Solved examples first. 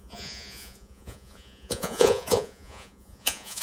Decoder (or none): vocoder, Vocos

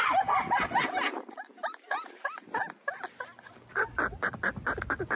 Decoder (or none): none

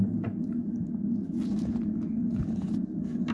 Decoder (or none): none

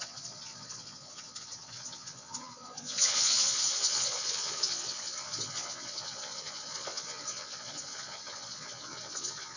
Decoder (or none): vocoder, Vocos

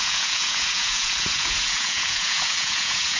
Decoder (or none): vocoder, Vocos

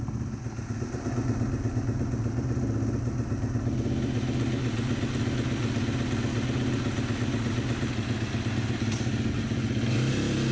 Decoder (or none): none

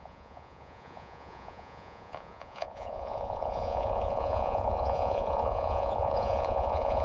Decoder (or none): vocoder, Vocos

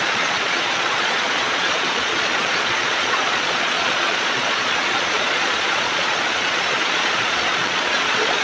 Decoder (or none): vocoder, Vocos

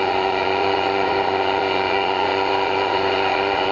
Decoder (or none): vocoder, Vocos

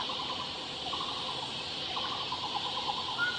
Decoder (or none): none